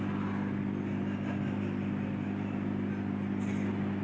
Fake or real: real